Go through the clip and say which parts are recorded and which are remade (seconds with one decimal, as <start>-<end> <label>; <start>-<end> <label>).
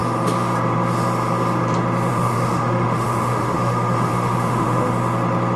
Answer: 0.0-2.1 recorded; 2.1-4.9 remade; 4.9-5.6 recorded